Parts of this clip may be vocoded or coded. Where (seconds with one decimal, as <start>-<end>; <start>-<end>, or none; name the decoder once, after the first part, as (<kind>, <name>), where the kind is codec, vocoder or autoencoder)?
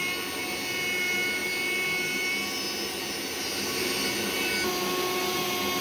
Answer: none